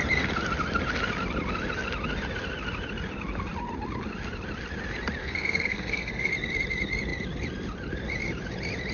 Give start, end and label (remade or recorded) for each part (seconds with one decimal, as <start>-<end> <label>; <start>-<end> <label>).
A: 0.0-5.2 recorded; 5.2-6.3 remade; 6.3-8.9 recorded